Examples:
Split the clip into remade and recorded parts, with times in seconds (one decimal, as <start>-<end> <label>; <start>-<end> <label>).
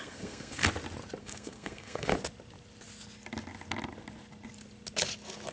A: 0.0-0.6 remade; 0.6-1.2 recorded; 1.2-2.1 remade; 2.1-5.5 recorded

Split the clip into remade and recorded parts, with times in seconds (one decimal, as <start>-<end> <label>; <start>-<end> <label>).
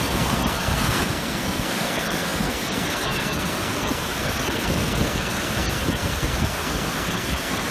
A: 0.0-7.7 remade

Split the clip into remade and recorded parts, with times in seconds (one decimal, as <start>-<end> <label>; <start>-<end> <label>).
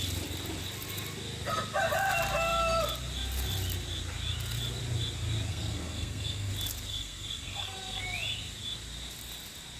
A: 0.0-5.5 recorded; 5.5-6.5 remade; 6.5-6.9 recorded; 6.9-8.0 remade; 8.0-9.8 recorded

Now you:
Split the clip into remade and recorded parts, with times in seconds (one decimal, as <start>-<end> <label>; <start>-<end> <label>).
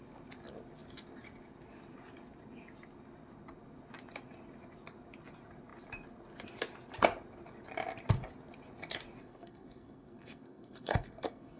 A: 0.0-9.2 recorded; 9.2-11.6 remade